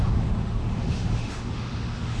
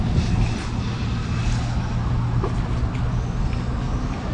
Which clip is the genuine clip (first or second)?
second